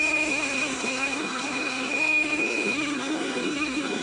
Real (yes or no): no